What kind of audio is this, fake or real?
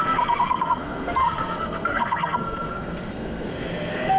fake